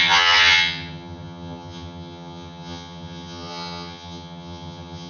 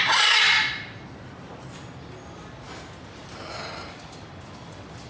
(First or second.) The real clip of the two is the second